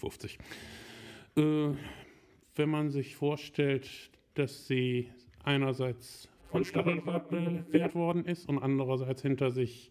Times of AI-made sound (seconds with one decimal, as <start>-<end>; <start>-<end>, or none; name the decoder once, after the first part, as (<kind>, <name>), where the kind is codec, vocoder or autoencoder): 6.4-7.9 (vocoder, BigVGAN v2)